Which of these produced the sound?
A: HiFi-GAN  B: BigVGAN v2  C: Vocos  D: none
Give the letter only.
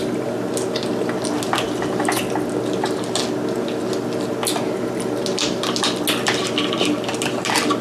D